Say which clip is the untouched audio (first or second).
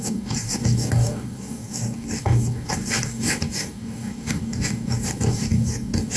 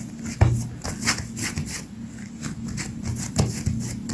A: second